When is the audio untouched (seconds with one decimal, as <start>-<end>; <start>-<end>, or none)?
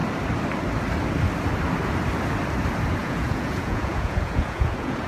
0.0-3.0